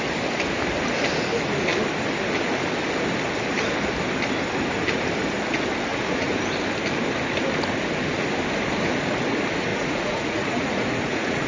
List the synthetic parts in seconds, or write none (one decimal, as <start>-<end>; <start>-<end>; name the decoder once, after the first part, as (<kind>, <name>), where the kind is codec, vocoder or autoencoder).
5.9-6.4 (vocoder, Vocos); 9.7-11.5